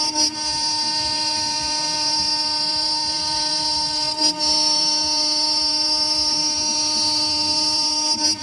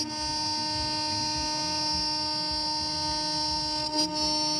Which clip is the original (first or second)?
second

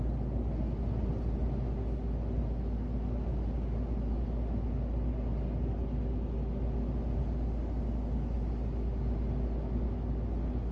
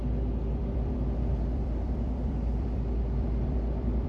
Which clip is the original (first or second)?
first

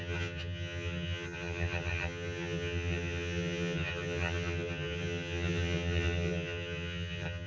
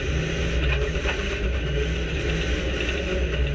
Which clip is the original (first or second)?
second